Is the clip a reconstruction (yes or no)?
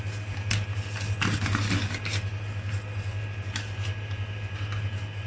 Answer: no